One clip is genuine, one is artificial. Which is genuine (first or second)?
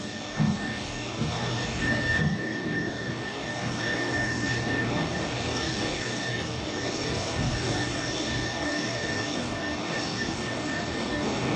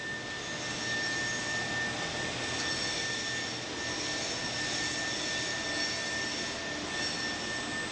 second